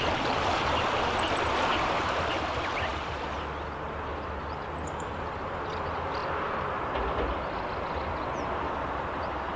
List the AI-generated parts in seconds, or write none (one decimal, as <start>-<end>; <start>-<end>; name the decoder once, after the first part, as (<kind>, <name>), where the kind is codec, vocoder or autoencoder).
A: 0.0-6.2 (vocoder, BigVGAN v2)